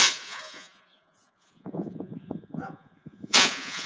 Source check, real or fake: fake